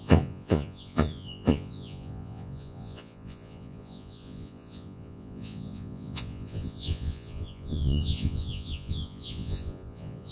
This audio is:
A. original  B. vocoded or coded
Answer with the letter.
B